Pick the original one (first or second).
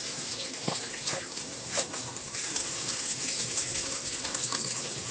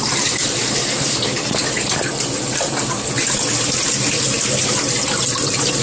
second